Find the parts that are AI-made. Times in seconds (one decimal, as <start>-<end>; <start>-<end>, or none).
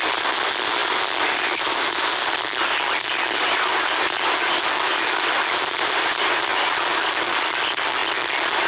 none